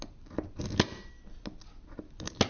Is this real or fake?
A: real